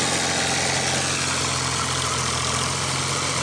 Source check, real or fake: real